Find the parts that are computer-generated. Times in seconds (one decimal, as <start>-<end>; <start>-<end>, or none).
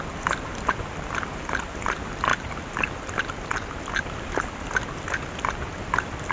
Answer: none